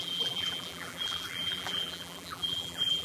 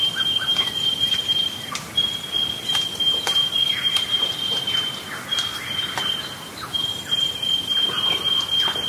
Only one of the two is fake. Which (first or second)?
first